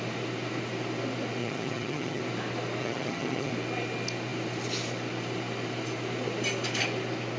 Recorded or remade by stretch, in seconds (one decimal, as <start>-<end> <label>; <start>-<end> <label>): 0.0-1.4 recorded; 1.4-2.2 remade; 2.2-2.8 recorded; 2.8-3.5 remade; 3.5-7.4 recorded